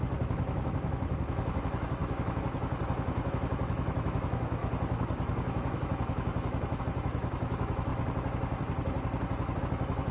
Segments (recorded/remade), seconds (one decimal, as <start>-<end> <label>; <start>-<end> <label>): 0.0-7.9 remade; 7.9-9.6 recorded; 9.6-10.1 remade